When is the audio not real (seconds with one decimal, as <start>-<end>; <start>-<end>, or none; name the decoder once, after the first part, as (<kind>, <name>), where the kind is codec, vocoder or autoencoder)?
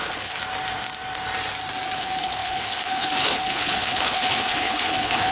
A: 0.0-0.4 (codec, HILCodec); 2.0-5.3